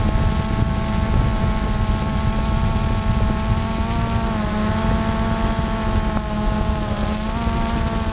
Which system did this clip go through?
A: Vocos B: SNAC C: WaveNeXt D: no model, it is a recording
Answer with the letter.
D